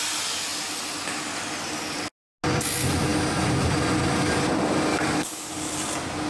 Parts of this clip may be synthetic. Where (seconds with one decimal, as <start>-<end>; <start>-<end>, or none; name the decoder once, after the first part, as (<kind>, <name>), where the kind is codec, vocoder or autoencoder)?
4.9-5.5 (codec, DAC)